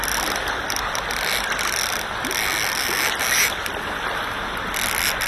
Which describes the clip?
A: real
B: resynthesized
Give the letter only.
A